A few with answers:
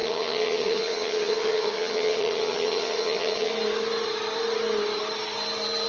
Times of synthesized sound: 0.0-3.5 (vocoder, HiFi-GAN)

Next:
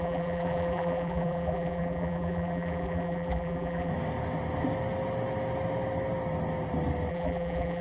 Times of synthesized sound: 0.0-3.9 (vocoder, BigVGAN v2); 7.1-7.8